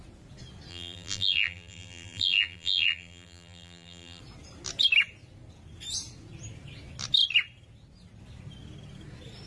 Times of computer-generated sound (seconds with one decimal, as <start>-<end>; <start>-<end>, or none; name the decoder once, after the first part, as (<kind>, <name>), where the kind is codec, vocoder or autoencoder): 0.7-4.2 (vocoder, BigVGAN v2)